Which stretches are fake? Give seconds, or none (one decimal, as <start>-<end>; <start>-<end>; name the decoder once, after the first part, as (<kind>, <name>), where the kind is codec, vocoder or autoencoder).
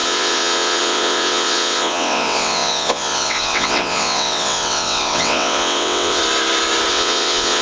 0.0-6.2 (vocoder, WaveNeXt); 6.9-7.6